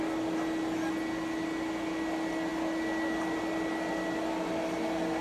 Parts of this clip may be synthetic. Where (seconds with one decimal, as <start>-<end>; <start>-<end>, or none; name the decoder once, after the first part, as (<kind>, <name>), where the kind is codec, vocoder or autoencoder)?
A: none